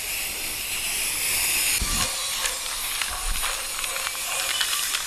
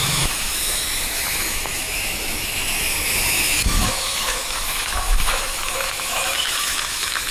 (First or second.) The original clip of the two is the first